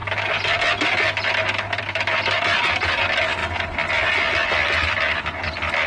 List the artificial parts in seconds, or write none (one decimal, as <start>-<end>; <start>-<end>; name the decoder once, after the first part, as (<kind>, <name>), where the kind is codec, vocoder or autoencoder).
none